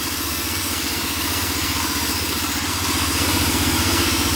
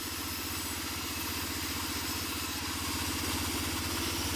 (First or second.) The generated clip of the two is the first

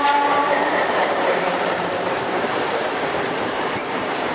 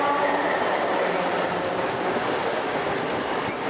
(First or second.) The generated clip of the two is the first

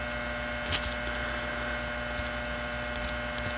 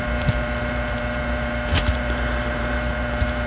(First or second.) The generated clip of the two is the second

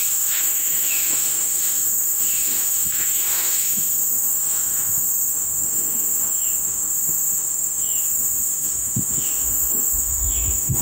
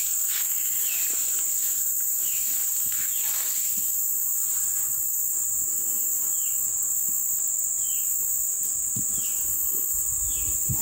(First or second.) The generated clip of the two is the first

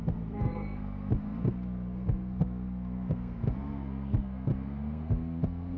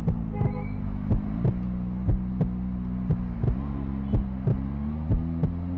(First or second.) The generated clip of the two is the first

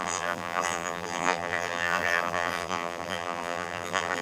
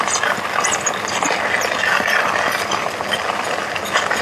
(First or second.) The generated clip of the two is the first